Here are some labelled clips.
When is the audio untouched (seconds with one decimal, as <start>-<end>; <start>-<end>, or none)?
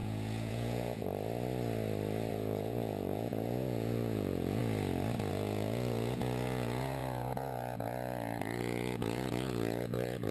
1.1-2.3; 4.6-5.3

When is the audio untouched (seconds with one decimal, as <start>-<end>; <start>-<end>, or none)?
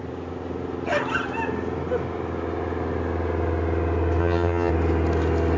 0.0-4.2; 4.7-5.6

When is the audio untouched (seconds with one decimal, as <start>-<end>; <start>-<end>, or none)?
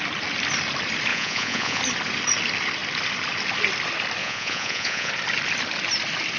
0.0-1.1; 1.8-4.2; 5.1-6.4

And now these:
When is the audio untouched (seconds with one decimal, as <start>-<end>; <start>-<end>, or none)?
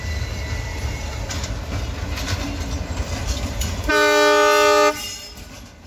0.0-0.7; 1.4-3.2; 3.9-5.9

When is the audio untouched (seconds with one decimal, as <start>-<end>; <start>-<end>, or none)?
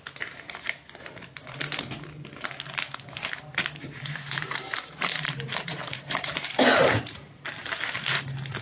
0.0-3.8; 7.9-8.6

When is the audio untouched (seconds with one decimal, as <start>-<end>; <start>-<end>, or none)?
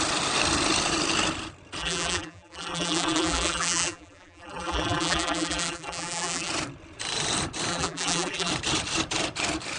0.0-1.8; 6.5-7.7; 8.5-9.8